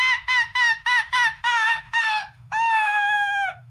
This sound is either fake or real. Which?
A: fake